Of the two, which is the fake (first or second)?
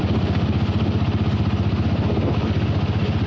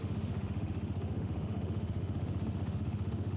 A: second